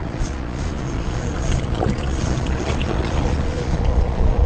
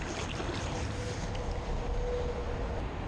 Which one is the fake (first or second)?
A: first